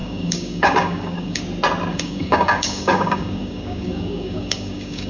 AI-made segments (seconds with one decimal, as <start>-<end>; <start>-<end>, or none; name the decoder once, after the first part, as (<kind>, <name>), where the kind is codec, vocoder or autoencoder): 0.0-1.4 (codec, DAC); 1.9-5.1